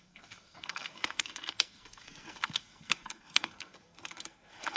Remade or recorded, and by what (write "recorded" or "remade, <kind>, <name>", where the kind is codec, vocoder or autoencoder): remade, codec, SNAC